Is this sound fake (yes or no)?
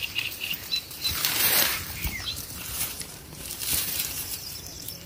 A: yes